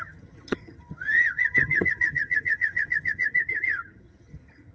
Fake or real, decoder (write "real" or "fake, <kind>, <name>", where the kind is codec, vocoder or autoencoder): fake, vocoder, HiFi-GAN